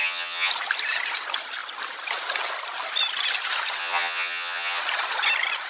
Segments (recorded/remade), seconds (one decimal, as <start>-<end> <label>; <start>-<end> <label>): 0.0-0.5 remade; 0.5-3.8 recorded; 3.8-4.8 remade; 4.8-5.7 recorded